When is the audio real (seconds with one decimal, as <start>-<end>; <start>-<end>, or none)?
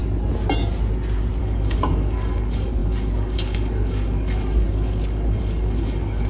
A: 0.0-1.4